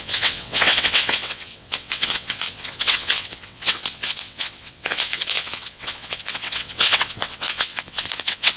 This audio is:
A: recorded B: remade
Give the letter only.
B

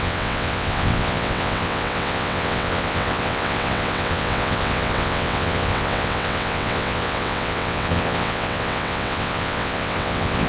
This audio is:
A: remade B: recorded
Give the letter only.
A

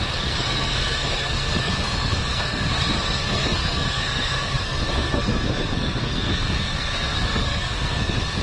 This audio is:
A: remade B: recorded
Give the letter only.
A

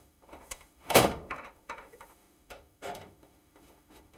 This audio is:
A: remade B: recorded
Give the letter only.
A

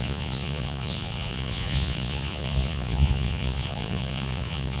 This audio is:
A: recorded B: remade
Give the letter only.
B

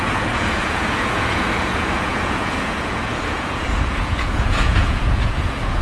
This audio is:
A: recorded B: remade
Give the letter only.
B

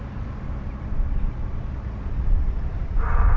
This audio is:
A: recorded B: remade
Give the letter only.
A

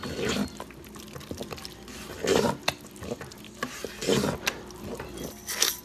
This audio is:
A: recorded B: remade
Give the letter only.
A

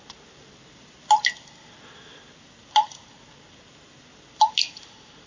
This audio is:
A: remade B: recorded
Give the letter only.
B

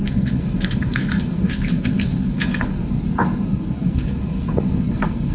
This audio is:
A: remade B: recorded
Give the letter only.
A